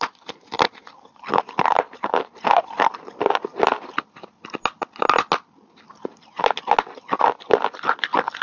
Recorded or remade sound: recorded